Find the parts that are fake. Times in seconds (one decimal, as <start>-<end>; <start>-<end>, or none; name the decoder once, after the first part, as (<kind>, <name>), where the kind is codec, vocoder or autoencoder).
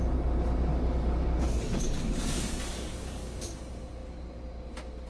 0.7-3.5 (codec, DAC)